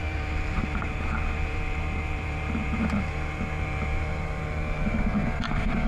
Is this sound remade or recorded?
remade